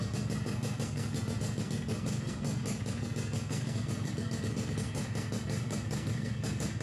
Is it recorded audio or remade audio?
remade